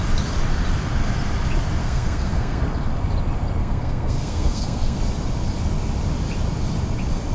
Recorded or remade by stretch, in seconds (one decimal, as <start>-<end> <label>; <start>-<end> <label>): 0.0-1.8 recorded; 1.8-2.6 remade; 2.6-3.6 recorded; 3.6-5.0 remade; 5.0-7.3 recorded